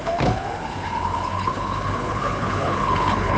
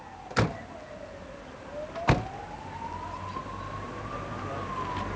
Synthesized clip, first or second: first